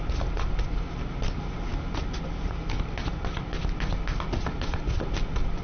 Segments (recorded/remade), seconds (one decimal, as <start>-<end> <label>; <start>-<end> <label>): 0.0-5.6 recorded

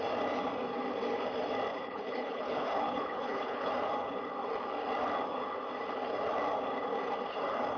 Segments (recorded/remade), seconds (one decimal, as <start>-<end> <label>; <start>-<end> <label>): 0.0-1.7 recorded; 1.7-3.7 remade; 3.7-7.8 recorded

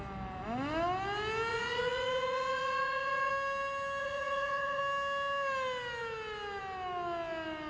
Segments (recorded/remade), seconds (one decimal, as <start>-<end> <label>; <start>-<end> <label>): 0.0-1.5 recorded; 1.5-3.3 remade; 3.3-4.0 recorded; 4.0-4.8 remade; 4.8-7.7 recorded

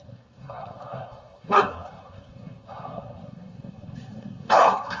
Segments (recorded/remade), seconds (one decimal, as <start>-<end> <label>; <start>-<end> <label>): 0.0-5.0 remade

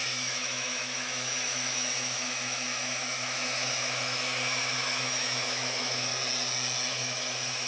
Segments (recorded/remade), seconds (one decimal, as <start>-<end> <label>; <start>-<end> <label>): 0.0-6.1 remade; 6.1-6.9 recorded; 6.9-7.7 remade

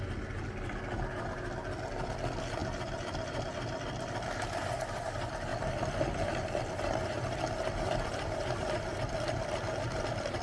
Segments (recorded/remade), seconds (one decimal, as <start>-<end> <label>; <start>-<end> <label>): 0.0-2.6 recorded; 2.6-5.0 remade; 5.0-5.5 recorded; 5.5-10.0 remade; 10.0-10.4 recorded

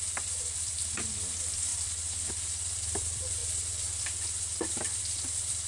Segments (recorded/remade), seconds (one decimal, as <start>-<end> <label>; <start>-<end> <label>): 0.0-5.7 remade